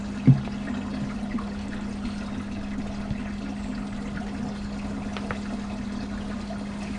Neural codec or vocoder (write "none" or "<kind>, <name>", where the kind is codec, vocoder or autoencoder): none